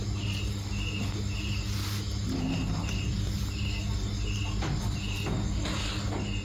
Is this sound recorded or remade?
recorded